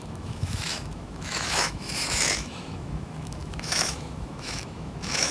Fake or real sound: fake